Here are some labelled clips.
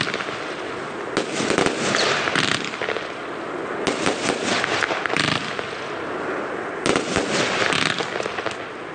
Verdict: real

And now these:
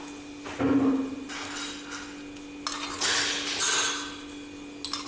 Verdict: real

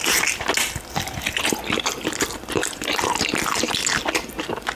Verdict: real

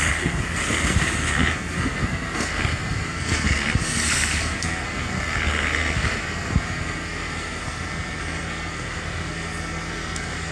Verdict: fake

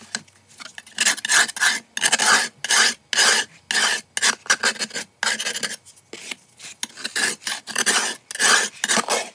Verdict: real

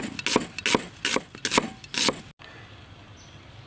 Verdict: real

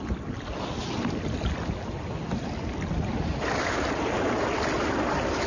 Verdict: real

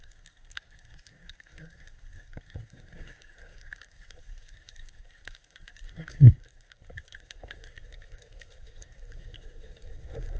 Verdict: fake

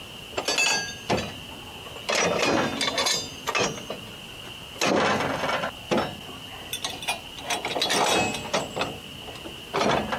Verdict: real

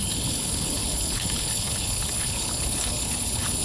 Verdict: fake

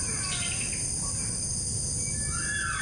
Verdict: real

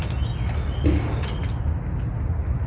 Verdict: real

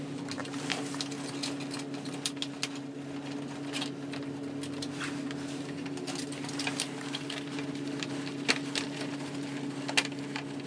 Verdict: real